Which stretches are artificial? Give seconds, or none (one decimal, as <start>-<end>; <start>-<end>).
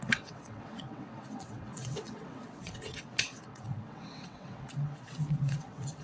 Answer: 0.0-6.0